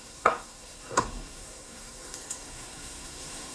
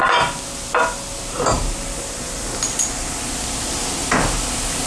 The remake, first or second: first